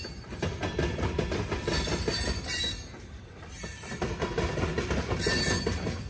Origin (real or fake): fake